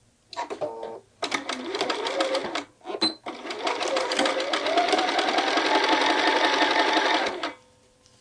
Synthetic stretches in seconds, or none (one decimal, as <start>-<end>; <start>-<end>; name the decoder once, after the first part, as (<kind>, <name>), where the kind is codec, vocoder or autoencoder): none